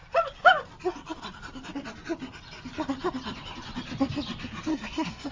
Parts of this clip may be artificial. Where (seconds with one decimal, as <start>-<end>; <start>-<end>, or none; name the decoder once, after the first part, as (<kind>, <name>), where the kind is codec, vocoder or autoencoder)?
4.7-5.3 (codec, SNAC)